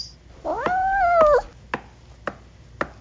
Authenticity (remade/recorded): recorded